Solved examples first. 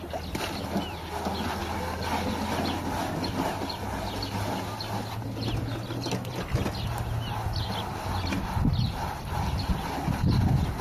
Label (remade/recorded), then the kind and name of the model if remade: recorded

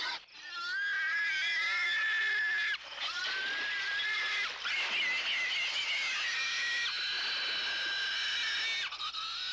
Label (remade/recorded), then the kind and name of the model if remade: recorded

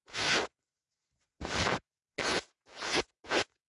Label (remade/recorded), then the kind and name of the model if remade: recorded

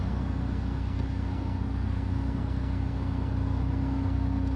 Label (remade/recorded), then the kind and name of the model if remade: remade, codec, SNAC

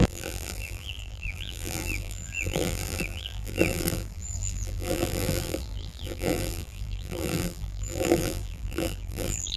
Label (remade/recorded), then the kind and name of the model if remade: remade, vocoder, BigVGAN v2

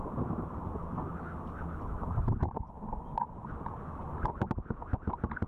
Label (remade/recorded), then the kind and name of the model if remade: recorded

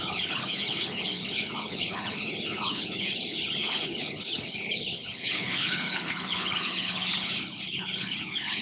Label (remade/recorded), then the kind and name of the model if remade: remade, codec, HILCodec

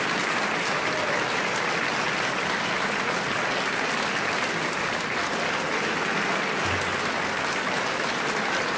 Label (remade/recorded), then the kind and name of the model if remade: recorded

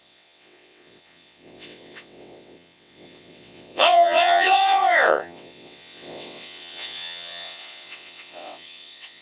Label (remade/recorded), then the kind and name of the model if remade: remade, vocoder, WaveNeXt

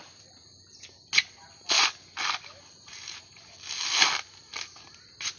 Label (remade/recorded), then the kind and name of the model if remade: recorded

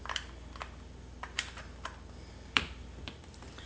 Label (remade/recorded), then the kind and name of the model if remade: remade, vocoder, BigVGAN v2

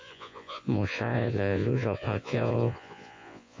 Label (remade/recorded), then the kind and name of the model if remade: remade, vocoder, Vocos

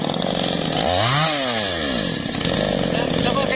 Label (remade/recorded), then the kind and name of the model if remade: recorded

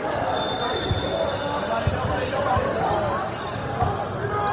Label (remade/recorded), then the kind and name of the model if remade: recorded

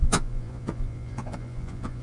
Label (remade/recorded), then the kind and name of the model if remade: remade, vocoder, Vocos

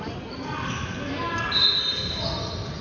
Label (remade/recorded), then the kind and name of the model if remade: recorded